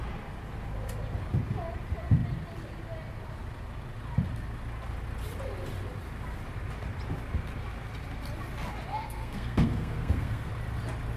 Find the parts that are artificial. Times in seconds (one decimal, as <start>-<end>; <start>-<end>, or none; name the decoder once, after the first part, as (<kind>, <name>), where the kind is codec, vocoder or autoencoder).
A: 8.9-10.5 (codec, SNAC)